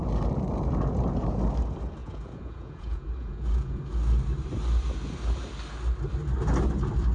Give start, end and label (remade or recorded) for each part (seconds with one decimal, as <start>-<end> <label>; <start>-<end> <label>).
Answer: 0.0-2.0 recorded; 2.0-3.8 remade; 3.8-7.1 recorded